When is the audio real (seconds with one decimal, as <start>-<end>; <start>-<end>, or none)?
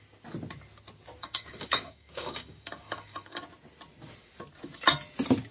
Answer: 0.0-1.2; 3.4-5.5